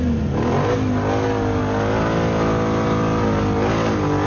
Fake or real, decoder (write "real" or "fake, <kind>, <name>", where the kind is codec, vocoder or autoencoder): real